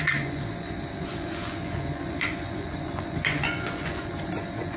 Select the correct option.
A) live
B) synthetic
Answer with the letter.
B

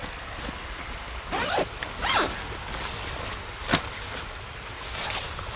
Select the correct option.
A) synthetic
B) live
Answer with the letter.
A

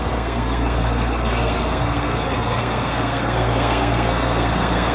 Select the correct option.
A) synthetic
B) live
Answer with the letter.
A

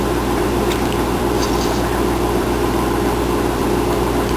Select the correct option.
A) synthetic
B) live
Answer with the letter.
A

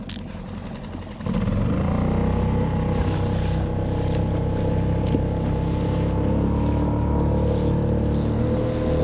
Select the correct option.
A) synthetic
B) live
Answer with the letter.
B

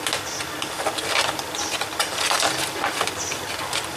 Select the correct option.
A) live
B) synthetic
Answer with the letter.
A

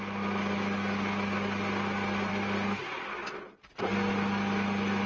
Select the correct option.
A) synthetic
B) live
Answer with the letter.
B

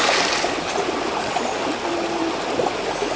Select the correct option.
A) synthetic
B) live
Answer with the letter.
B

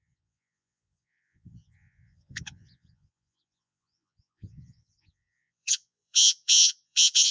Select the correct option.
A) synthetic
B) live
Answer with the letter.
A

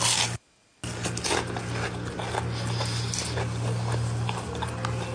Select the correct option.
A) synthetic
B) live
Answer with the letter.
B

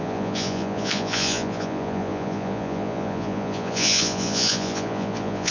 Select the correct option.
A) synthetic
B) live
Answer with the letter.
A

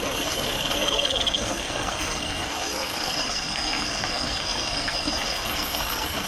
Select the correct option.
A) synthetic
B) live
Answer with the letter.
A